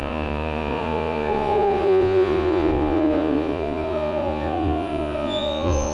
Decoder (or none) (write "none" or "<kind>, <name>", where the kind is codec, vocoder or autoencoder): vocoder, Vocos